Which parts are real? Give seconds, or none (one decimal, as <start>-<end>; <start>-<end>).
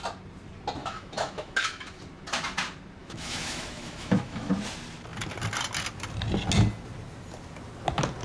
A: 0.0-0.8; 2.0-3.0; 4.5-8.2